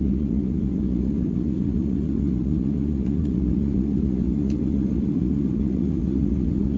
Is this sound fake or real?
fake